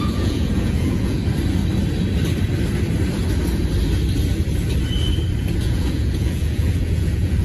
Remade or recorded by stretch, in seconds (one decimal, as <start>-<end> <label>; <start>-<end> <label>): 0.0-1.2 remade; 1.2-5.6 recorded; 5.6-7.4 remade